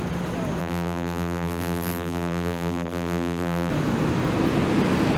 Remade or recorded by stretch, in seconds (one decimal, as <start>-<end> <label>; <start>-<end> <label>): 0.0-0.6 recorded; 0.6-3.7 remade; 3.7-5.2 recorded